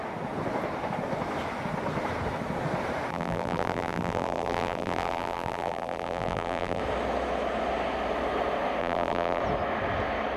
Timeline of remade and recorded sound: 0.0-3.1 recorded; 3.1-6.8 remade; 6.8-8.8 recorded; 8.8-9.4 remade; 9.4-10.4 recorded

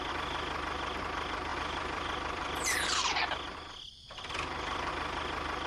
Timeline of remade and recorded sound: 0.0-1.5 recorded; 1.5-4.9 remade; 4.9-5.7 recorded

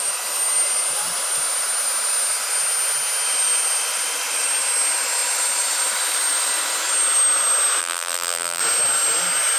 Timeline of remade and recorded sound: 0.0-7.8 recorded; 7.8-8.6 remade; 8.6-9.6 recorded

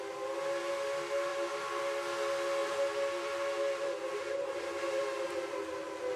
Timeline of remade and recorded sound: 0.0-1.3 recorded; 1.3-1.8 remade; 1.8-2.6 recorded; 2.6-4.6 remade; 4.6-6.2 recorded

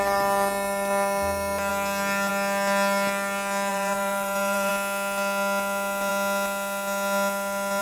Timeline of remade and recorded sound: 0.0-3.7 recorded; 3.7-4.7 remade; 4.7-7.8 recorded